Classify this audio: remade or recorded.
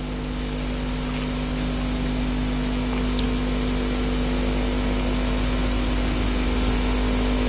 recorded